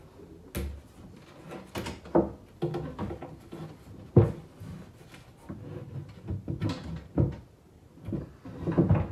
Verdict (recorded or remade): recorded